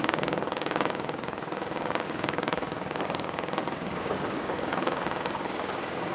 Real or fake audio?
fake